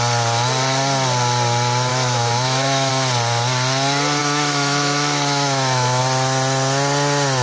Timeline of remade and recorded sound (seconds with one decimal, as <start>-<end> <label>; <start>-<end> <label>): 0.0-1.9 recorded; 1.9-2.9 remade; 2.9-4.2 recorded; 4.2-6.0 remade; 6.0-7.4 recorded